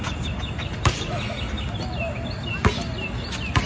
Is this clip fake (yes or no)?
no